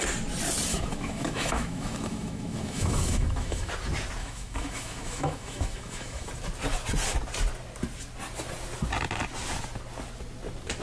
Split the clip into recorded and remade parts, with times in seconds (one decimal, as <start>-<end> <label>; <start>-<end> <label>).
0.0-0.7 recorded; 0.7-3.7 remade; 3.7-4.2 recorded; 4.2-6.3 remade; 6.3-10.8 recorded

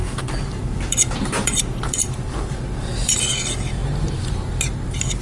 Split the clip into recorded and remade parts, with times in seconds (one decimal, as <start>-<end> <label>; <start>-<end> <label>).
0.0-3.1 remade; 3.1-5.2 recorded

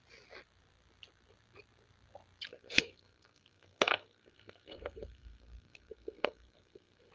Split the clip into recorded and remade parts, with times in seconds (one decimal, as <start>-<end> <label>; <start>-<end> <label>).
0.0-2.5 recorded; 2.5-7.1 remade

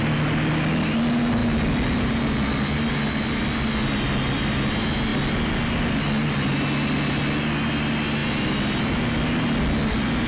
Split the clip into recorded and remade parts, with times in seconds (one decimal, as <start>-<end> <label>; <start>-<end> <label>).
0.0-10.3 recorded

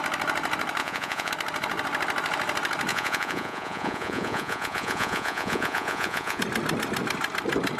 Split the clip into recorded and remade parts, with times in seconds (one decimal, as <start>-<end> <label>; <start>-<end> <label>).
0.0-0.8 recorded; 0.8-1.3 remade; 1.3-2.9 recorded; 2.9-6.4 remade; 6.4-7.8 recorded